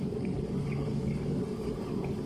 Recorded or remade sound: remade